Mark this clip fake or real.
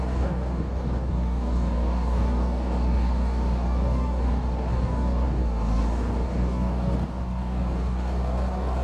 fake